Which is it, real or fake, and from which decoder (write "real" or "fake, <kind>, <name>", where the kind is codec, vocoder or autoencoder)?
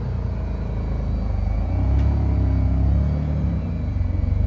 real